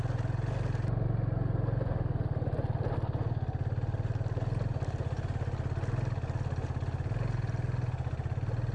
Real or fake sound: real